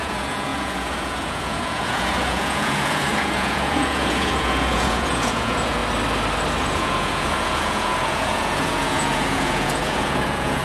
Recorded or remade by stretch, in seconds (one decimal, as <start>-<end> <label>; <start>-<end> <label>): 0.0-5.8 remade; 5.8-6.6 recorded; 6.6-10.6 remade